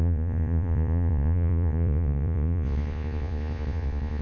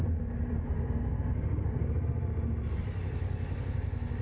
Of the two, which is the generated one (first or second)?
first